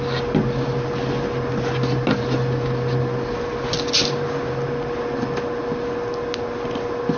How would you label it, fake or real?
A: real